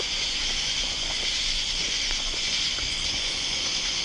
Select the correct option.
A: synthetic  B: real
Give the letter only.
A